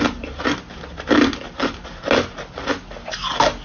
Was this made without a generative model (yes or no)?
yes